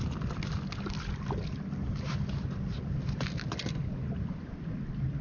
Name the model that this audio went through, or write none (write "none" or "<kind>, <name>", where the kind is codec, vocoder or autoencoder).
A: none